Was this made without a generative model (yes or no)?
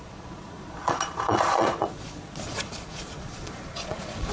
no